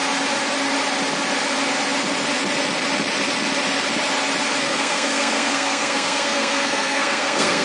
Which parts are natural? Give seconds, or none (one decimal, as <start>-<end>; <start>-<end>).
0.0-4.6